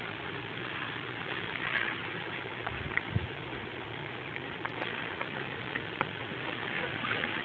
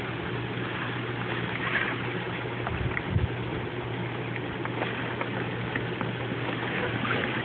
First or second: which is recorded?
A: second